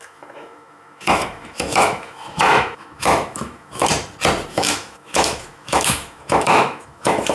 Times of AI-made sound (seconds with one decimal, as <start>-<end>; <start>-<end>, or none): 0.0-3.9; 4.5-7.3